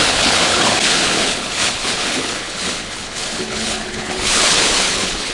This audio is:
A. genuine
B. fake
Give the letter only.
B